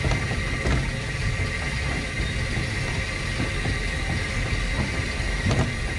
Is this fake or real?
real